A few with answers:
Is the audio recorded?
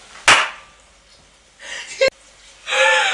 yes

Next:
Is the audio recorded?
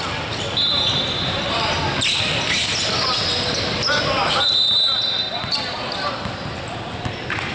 yes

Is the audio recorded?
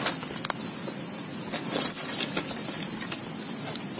yes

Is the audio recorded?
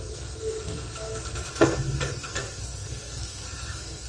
no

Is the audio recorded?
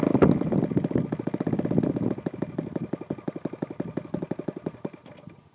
yes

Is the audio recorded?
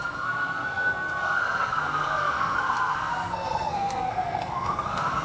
no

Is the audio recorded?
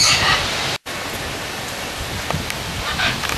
yes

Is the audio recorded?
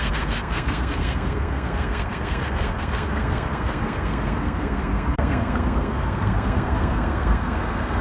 no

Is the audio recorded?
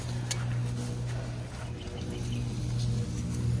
yes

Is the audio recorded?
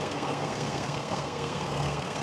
no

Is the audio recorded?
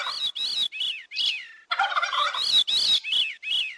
yes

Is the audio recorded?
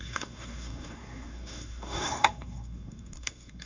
no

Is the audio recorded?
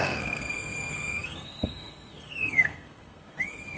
no